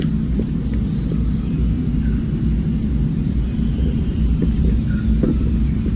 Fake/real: real